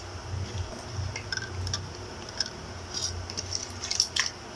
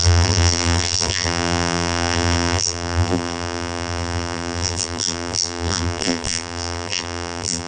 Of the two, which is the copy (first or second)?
second